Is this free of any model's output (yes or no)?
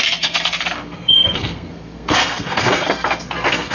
no